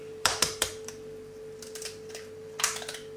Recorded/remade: remade